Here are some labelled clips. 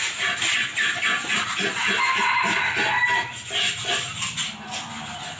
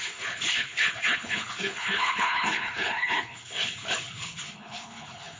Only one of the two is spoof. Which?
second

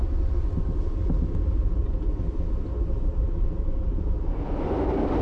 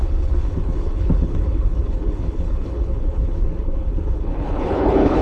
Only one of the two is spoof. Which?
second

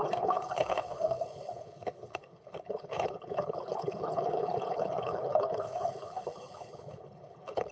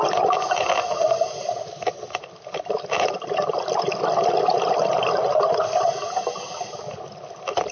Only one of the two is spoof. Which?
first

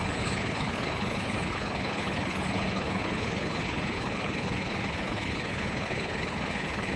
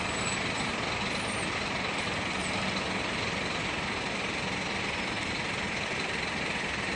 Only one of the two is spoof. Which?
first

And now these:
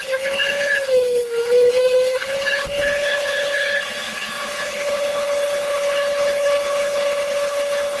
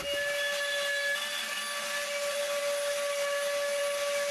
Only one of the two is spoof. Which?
first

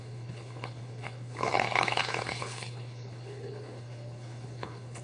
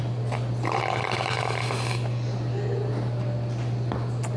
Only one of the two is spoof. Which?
first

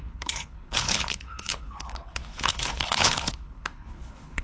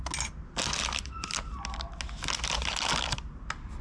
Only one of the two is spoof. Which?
first